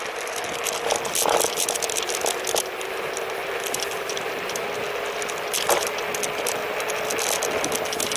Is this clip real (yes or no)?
yes